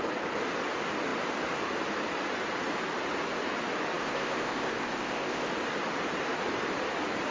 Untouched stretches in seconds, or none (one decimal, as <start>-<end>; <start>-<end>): 0.0-4.0; 5.5-7.3